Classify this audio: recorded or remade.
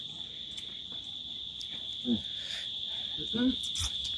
recorded